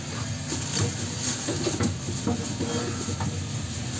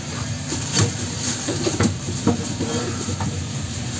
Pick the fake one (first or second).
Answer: second